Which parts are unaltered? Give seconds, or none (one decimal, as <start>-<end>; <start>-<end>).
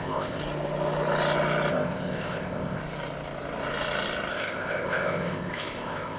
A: 0.4-1.7; 2.8-4.3